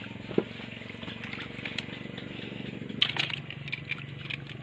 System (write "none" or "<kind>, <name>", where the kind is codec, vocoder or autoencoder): none